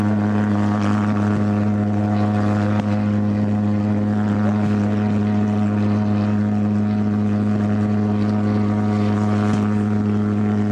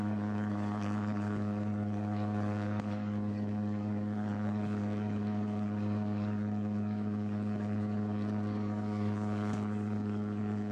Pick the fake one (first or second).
second